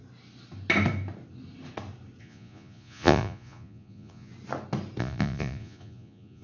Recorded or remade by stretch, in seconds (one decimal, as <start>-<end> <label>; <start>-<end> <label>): 0.0-2.2 recorded; 2.2-4.3 remade; 4.3-5.0 recorded; 5.0-6.4 remade